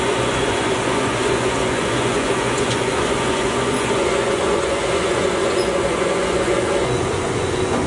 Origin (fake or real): fake